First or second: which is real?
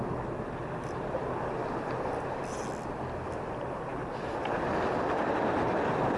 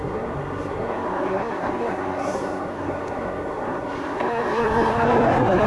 first